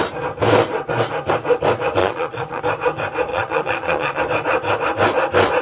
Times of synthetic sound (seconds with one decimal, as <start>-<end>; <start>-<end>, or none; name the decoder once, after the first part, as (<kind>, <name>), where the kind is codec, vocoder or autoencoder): 2.0-2.6 (vocoder, Vocos); 3.3-4.2